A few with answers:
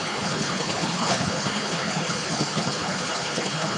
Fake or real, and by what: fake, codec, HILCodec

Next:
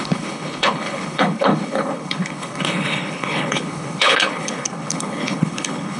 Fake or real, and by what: fake, codec, HILCodec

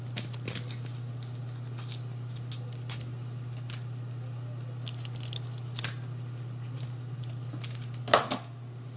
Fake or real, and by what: real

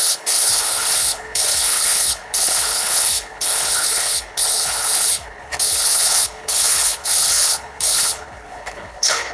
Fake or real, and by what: fake, codec, HILCodec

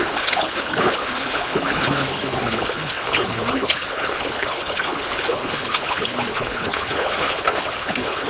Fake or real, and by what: fake, codec, HILCodec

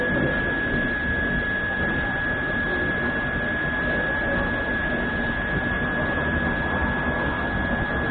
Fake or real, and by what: real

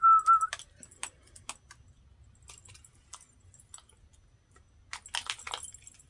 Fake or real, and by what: real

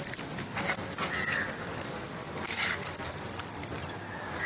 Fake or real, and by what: real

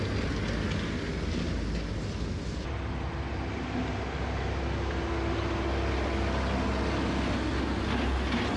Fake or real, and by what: real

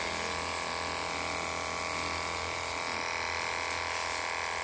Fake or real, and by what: real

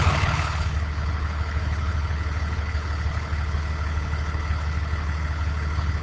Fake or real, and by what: fake, codec, HILCodec